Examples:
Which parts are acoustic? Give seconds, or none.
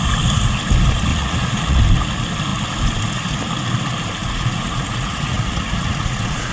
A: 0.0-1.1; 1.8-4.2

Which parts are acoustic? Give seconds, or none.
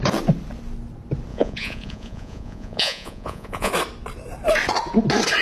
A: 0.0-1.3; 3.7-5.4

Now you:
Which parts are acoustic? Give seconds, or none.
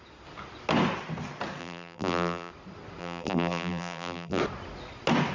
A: 0.0-1.6; 2.5-3.0; 4.4-5.3